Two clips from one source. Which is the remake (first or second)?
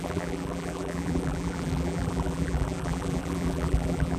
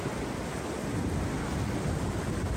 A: first